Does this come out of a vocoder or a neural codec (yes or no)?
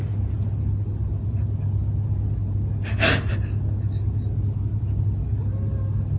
no